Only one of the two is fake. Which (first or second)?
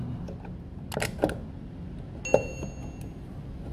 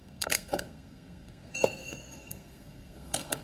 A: second